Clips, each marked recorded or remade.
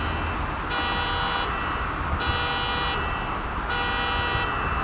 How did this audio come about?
recorded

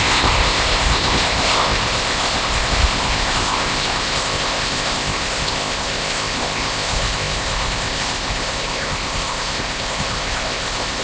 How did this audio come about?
remade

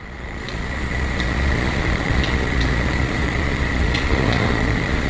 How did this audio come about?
remade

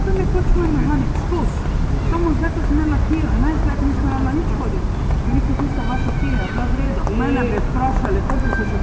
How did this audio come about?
recorded